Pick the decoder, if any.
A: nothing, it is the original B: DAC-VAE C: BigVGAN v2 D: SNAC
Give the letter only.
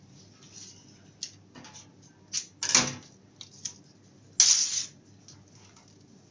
A